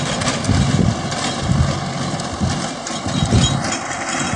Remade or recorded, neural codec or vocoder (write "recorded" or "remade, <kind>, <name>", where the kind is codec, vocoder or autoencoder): recorded